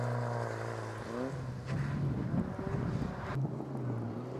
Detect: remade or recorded recorded